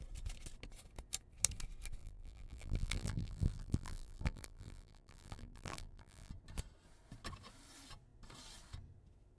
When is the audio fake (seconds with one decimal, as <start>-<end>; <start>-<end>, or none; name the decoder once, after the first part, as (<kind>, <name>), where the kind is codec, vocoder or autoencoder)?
2.0-6.3 (vocoder, BigVGAN v2)